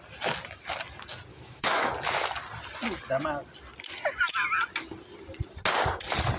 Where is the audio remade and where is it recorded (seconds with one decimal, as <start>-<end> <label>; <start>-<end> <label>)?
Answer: 0.0-1.3 recorded; 1.3-1.9 remade; 1.9-6.4 recorded